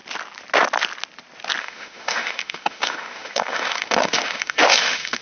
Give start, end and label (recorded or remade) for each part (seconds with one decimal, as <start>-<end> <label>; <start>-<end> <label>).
0.0-1.6 recorded; 1.6-5.2 remade